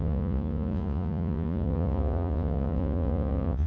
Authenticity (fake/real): fake